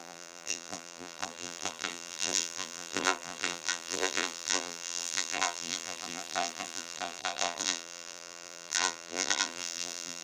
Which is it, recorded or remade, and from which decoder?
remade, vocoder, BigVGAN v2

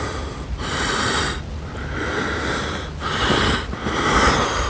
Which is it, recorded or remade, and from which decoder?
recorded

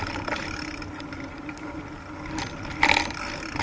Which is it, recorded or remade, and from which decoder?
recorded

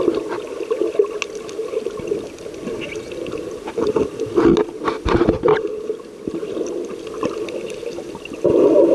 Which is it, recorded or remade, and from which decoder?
recorded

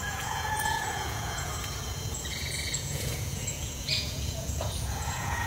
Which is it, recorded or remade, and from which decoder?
remade, vocoder, Vocos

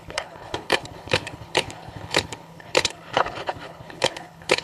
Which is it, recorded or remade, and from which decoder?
remade, codec, HILCodec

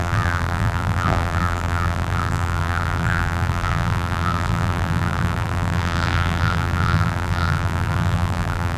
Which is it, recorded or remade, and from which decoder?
remade, vocoder, BigVGAN v2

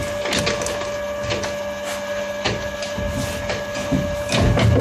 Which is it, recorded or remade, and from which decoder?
recorded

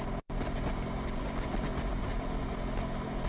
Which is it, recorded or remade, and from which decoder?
recorded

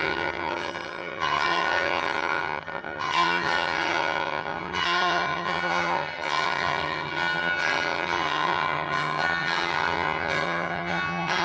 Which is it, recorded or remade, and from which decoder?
remade, vocoder, HiFi-GAN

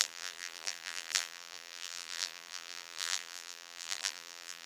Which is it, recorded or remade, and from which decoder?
remade, vocoder, BigVGAN v2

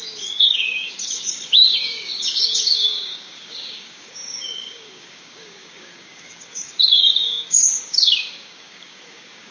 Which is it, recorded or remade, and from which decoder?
remade, codec, DAC